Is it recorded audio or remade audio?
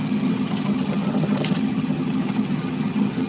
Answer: remade